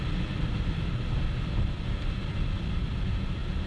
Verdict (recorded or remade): recorded